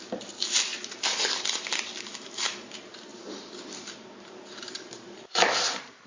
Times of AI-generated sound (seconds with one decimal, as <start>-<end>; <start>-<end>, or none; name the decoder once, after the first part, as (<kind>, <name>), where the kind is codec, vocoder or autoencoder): 0.0-0.7 (vocoder, BigVGAN v2); 2.0-3.1; 3.7-6.1